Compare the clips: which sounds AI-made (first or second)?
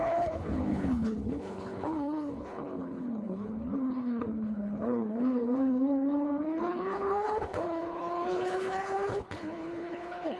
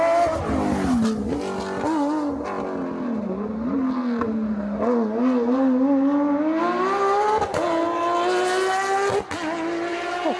first